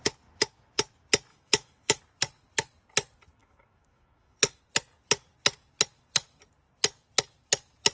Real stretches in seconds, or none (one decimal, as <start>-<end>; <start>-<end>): 0.0-1.3; 2.0-3.4; 4.6-7.9